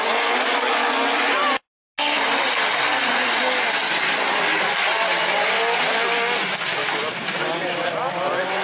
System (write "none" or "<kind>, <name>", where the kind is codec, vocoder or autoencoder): none